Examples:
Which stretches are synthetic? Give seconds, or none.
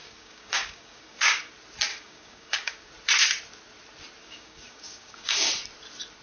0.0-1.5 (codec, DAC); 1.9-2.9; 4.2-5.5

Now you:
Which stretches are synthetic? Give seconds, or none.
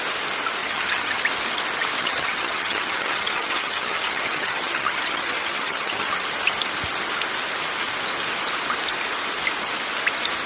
0.6-1.2 (vocoder, HiFi-GAN); 2.0-6.1